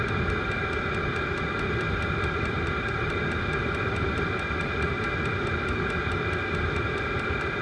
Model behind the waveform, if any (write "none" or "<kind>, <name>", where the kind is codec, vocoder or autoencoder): none